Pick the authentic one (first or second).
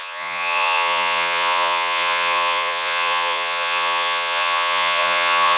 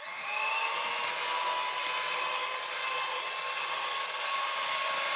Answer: second